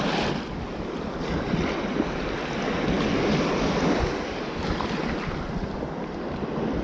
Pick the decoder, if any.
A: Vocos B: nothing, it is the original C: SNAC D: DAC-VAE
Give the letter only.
B